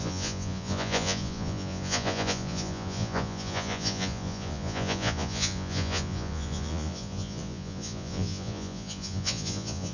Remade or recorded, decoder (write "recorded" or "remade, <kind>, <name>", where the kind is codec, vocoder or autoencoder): remade, vocoder, Vocos